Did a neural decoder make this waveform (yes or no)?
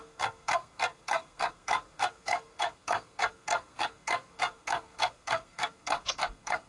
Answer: yes